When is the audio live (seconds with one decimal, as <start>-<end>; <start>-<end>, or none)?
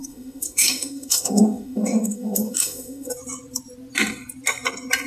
3.1-5.1